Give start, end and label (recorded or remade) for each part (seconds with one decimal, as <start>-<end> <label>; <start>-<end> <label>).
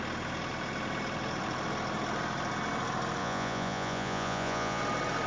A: 0.0-3.2 recorded; 3.2-4.8 remade; 4.8-5.3 recorded